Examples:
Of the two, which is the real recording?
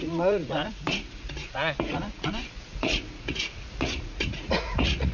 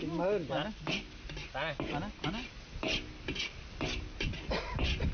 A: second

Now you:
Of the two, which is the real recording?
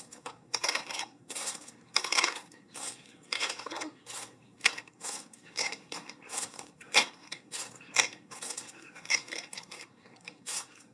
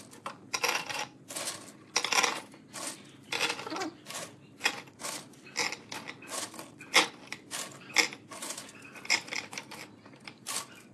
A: second